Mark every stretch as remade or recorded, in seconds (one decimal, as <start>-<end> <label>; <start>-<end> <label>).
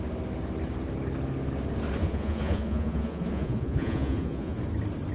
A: 0.0-2.0 recorded; 2.0-4.6 remade; 4.6-5.1 recorded